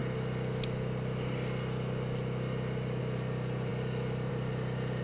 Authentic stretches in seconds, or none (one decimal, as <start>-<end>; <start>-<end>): 0.0-5.0